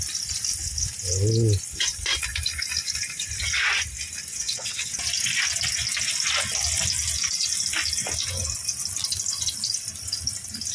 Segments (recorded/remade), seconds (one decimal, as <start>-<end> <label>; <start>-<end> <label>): 0.0-4.3 recorded; 4.3-4.8 remade; 4.8-10.7 recorded